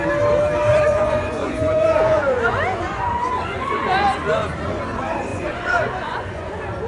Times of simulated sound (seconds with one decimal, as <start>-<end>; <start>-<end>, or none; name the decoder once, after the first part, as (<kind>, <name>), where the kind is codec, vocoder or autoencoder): 0.7-4.8 (vocoder, Vocos); 5.3-6.5